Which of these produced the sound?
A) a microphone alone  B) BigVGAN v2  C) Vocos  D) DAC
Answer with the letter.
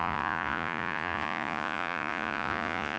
C